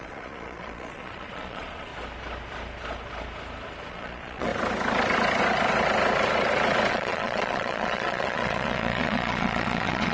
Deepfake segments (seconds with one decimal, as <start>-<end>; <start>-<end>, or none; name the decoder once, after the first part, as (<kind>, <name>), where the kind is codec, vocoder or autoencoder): 0.0-1.9 (vocoder, Vocos); 3.9-4.5; 6.9-10.1